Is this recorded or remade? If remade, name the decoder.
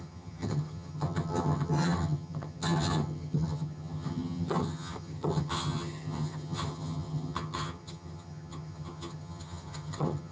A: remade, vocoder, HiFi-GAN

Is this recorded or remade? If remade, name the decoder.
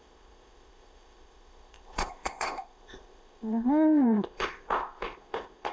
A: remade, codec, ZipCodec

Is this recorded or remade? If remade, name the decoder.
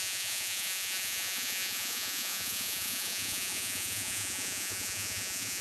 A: remade, vocoder, Vocos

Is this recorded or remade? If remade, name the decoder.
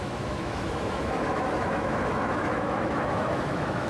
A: remade, autoencoder, DAC-VAE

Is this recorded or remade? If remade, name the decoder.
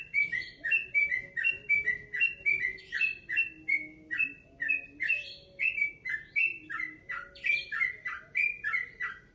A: recorded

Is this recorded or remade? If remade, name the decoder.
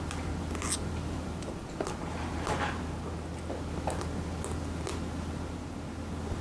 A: recorded